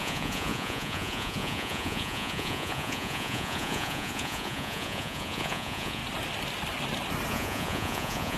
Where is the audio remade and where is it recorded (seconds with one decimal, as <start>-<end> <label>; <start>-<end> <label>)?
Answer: 0.0-6.0 remade; 6.0-7.3 recorded; 7.3-8.4 remade